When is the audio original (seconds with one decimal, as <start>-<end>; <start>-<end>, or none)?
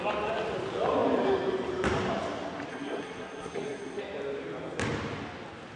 0.0-2.7; 4.0-5.8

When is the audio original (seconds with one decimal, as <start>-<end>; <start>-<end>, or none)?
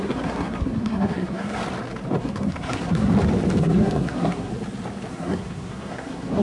1.6-2.2; 3.1-3.6; 4.5-5.1